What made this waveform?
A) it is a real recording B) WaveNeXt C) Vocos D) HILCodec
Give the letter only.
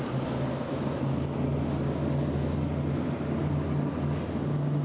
A